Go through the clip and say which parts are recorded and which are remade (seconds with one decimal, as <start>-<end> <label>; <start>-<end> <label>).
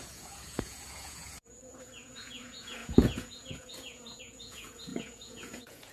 0.0-5.9 remade